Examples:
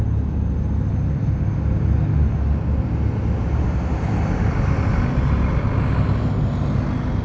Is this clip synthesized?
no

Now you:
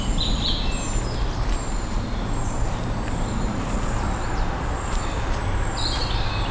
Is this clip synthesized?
no